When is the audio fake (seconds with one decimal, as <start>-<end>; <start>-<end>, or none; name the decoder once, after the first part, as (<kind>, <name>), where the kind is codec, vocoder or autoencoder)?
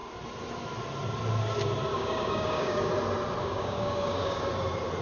1.9-2.9 (codec, DAC); 3.4-4.5